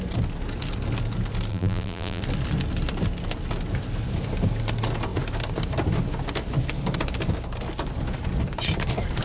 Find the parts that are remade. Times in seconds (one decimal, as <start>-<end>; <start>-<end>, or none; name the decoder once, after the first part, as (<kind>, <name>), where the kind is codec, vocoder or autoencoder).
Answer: 1.5-2.2 (vocoder, BigVGAN v2)